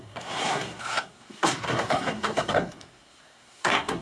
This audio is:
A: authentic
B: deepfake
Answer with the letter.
B